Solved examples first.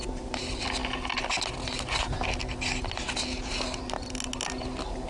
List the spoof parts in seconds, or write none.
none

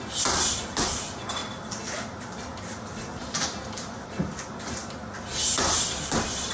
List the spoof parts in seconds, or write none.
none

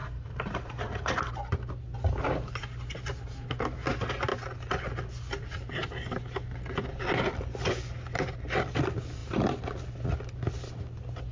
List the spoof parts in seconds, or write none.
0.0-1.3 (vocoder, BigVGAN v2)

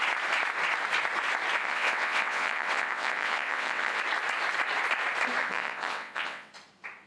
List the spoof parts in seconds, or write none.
1.6-4.0 (vocoder, WaveNeXt); 5.4-6.5